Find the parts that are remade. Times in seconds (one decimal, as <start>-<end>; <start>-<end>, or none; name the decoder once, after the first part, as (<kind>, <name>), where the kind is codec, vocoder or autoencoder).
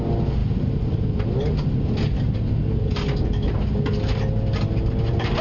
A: none